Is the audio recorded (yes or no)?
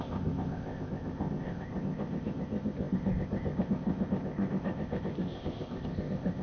no